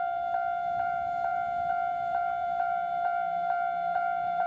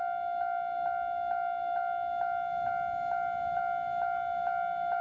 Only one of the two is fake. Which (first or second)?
first